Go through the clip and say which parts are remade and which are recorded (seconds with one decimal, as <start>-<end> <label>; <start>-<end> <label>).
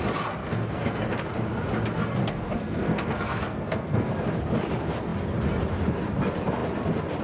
0.0-0.4 recorded; 0.4-1.1 remade; 1.1-2.2 recorded; 2.2-4.1 remade; 4.1-7.2 recorded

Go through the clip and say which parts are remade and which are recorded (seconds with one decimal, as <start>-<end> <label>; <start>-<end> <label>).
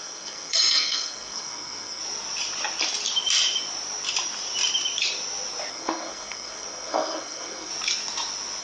0.0-2.0 remade; 2.0-5.7 recorded; 5.7-7.7 remade; 7.7-8.6 recorded